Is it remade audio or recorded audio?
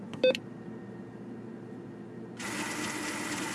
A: recorded